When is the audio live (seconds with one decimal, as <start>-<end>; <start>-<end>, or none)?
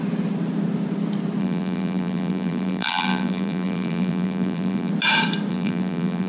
0.0-1.4; 4.9-5.5